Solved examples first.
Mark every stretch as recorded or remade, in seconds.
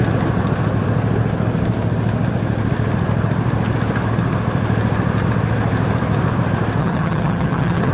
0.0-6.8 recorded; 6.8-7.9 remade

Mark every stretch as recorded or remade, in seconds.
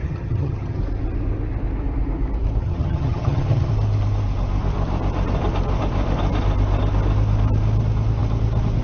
0.0-0.8 remade; 0.8-2.6 recorded; 2.6-3.7 remade; 3.7-8.8 recorded